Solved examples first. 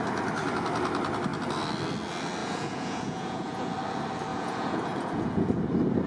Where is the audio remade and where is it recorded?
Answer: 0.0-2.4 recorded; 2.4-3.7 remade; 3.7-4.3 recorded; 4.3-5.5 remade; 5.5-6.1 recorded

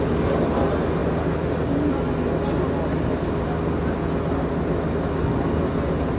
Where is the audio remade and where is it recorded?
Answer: 0.0-6.2 recorded

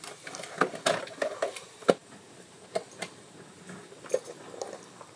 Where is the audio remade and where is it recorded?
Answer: 0.0-5.2 recorded

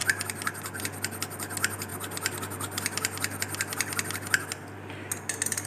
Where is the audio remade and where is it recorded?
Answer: 0.0-5.7 recorded

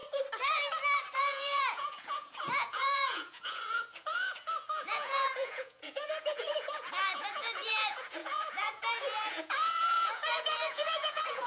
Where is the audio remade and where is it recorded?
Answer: 0.0-1.2 recorded; 1.2-11.5 remade